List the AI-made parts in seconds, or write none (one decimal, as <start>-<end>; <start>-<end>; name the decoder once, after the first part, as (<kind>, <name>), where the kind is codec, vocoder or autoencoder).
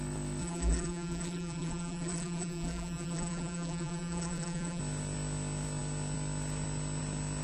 0.4-4.8 (vocoder, BigVGAN v2)